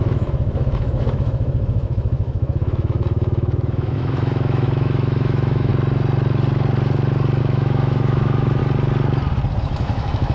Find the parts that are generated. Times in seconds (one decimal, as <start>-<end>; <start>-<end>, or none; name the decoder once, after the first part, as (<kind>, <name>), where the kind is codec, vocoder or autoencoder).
0.0-5.7 (autoencoder, DAC-VAE); 7.4-8.6; 9.6-10.3